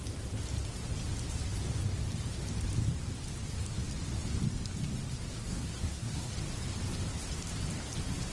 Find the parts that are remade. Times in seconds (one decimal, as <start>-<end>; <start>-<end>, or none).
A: 5.4-6.3